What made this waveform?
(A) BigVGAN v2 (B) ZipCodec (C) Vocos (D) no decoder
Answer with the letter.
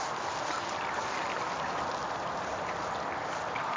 D